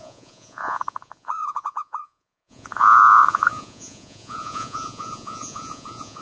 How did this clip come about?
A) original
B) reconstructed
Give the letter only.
B